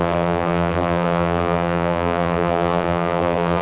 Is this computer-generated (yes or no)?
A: yes